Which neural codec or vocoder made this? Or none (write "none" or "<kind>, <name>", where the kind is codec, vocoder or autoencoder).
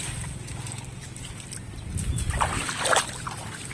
none